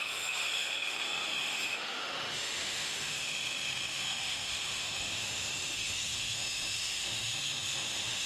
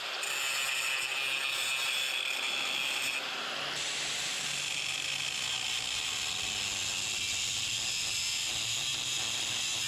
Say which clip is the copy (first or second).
first